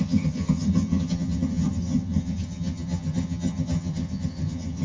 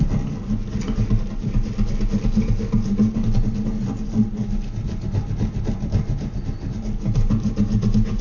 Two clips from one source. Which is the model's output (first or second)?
first